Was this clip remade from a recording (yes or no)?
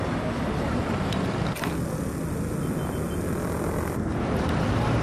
no